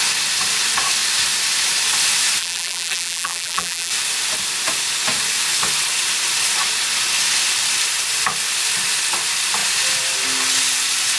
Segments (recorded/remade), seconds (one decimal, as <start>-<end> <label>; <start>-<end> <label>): 0.0-2.4 recorded; 2.4-3.9 remade; 3.9-11.2 recorded